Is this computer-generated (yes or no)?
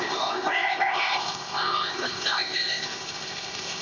yes